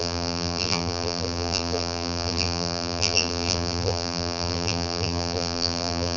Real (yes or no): no